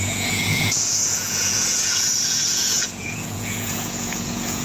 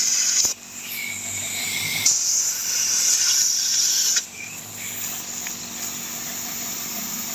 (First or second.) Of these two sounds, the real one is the second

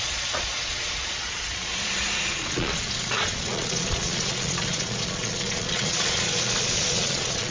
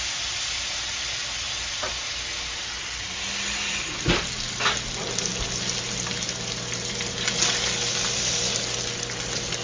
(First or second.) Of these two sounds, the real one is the second